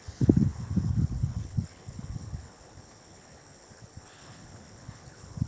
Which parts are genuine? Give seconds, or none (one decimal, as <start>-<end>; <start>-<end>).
none